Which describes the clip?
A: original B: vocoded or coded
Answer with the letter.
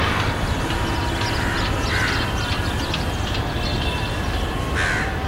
A